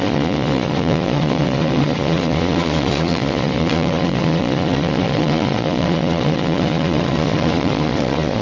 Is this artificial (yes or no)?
yes